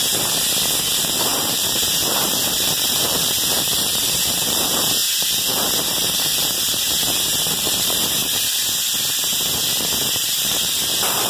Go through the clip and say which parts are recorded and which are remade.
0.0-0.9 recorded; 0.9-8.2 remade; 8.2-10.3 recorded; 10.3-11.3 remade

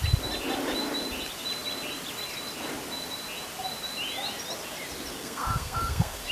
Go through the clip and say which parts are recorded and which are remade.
0.0-5.1 recorded; 5.1-6.3 remade

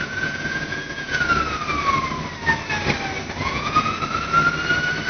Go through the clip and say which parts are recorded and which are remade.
0.0-1.2 remade; 1.2-3.4 recorded; 3.4-4.0 remade; 4.0-5.1 recorded